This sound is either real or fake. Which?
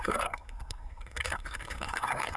fake